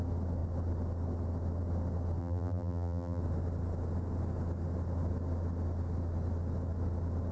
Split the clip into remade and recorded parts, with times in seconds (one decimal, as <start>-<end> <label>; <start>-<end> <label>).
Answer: 0.0-2.2 recorded; 2.2-3.2 remade; 3.2-7.3 recorded